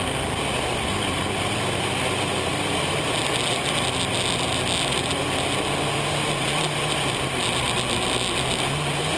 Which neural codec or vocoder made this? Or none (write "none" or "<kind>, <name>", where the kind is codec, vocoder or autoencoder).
none